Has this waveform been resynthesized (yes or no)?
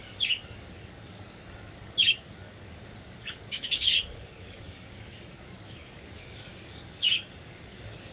yes